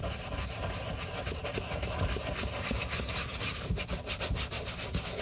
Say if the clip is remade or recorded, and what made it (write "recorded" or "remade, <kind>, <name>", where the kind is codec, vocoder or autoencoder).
recorded